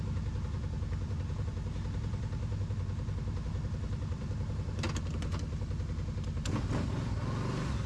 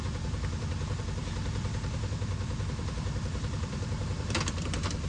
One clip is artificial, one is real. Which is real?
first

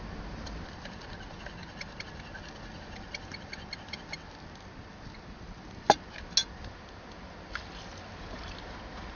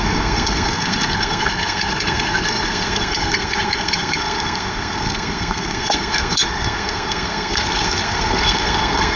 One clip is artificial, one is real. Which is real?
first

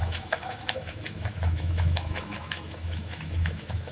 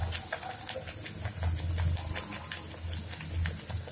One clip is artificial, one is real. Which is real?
second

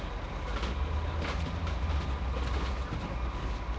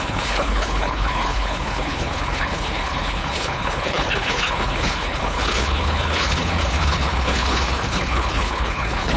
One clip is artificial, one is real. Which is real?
first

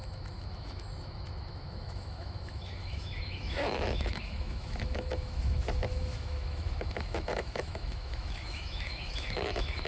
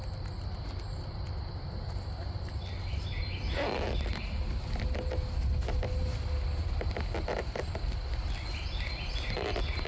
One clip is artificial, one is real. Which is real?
second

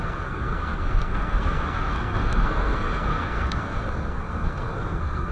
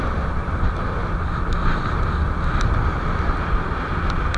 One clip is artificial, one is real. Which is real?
second